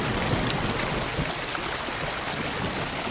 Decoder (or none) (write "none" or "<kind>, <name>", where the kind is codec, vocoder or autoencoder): none